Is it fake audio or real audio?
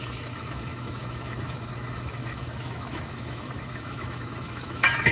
fake